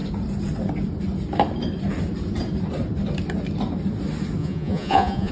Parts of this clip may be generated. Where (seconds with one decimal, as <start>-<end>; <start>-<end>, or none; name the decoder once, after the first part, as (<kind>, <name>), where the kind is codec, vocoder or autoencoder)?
4.4-5.3 (vocoder, Vocos)